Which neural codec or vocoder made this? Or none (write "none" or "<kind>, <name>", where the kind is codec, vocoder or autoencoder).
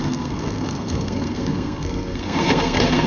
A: codec, SNAC